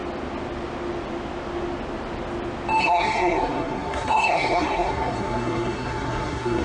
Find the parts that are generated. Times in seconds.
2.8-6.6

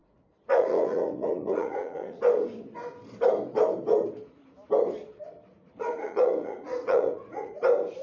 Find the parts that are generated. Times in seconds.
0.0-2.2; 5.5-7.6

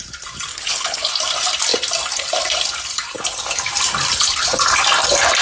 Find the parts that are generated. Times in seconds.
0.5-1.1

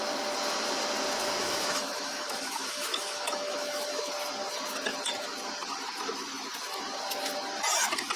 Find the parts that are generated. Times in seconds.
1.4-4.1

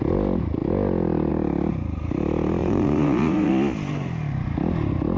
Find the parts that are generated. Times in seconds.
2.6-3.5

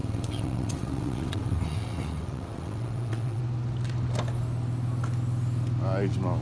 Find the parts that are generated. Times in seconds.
0.0-3.4